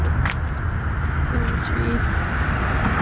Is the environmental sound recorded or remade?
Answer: recorded